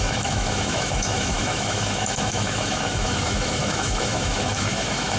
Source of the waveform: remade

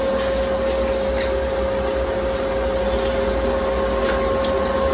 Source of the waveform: recorded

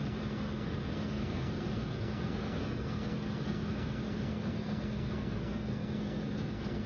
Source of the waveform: remade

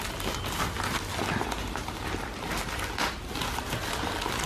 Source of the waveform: recorded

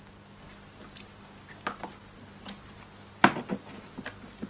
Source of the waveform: recorded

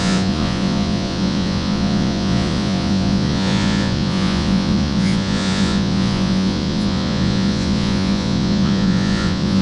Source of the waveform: remade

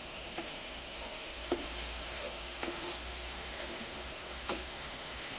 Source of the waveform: remade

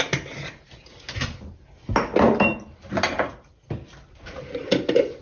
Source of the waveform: recorded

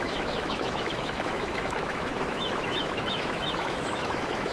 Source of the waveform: remade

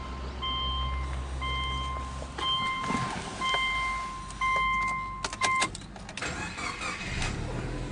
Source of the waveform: recorded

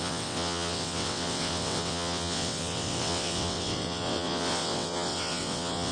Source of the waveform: remade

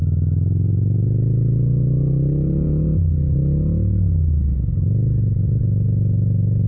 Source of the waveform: recorded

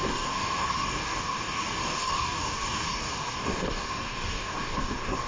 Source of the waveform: remade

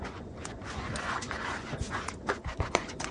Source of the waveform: remade